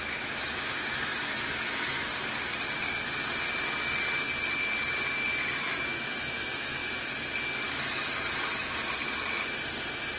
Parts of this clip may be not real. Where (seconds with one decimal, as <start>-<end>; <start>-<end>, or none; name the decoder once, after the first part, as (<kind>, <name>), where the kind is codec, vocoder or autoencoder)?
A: 0.0-2.1 (autoencoder, DAC-VAE); 5.6-6.8; 7.7-9.0